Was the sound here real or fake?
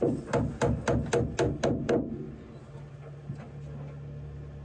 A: real